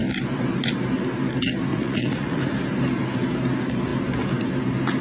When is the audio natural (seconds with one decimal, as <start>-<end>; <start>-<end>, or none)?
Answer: 0.0-1.7; 2.4-5.0